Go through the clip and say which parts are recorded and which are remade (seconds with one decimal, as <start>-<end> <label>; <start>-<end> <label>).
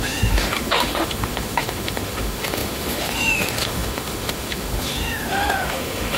0.0-6.2 remade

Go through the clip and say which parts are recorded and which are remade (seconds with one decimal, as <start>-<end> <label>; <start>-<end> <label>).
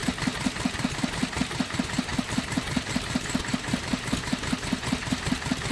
0.0-2.1 recorded; 2.1-3.4 remade; 3.4-5.7 recorded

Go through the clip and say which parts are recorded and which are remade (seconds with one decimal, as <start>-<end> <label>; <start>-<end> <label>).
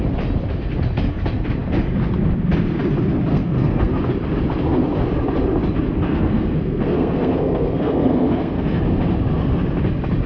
0.0-3.3 recorded; 3.3-3.9 remade; 3.9-6.1 recorded; 6.1-8.8 remade; 8.8-10.3 recorded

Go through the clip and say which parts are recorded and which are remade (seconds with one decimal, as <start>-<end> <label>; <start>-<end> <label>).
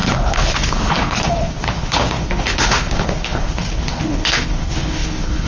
0.0-5.5 remade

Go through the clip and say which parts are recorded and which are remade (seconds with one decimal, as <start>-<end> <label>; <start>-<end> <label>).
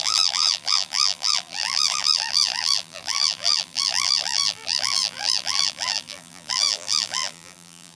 0.0-8.0 remade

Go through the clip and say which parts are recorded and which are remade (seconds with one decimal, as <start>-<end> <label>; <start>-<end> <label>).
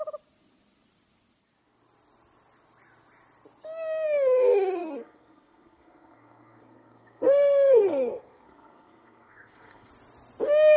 0.0-4.8 recorded; 4.8-9.9 remade; 9.9-10.8 recorded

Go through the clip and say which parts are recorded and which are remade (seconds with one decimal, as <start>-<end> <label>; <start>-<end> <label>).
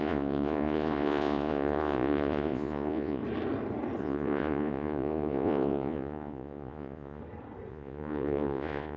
0.0-3.2 remade; 3.2-4.0 recorded; 4.0-7.2 remade; 7.2-7.7 recorded; 7.7-9.0 remade